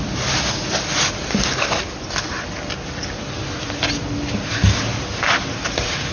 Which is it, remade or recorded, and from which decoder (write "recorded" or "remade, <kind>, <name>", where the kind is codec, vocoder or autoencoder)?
recorded